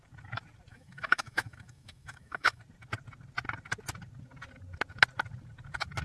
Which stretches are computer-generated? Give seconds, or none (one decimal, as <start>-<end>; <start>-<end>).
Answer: 0.7-2.6